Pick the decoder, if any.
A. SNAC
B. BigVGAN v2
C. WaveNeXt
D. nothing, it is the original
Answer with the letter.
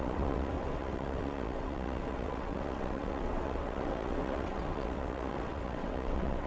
C